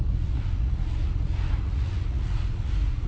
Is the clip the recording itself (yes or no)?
no